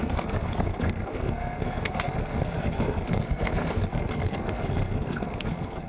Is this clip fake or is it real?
fake